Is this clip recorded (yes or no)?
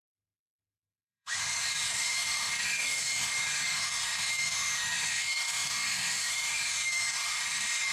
no